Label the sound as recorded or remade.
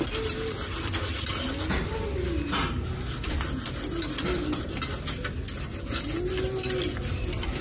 recorded